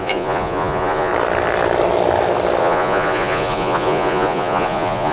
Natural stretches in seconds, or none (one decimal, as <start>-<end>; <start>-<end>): 1.1-2.6